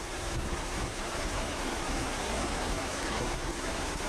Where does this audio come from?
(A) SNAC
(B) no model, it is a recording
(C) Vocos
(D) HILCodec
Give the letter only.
A